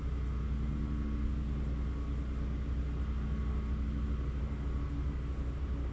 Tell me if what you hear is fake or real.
real